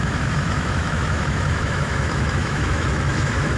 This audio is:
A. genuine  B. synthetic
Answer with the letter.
B